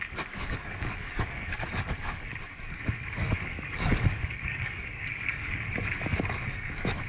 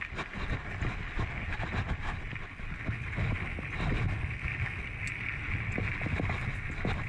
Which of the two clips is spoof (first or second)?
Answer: first